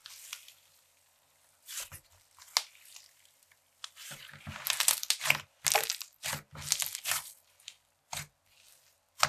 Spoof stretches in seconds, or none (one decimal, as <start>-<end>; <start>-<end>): none